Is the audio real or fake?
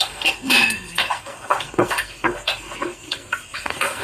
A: fake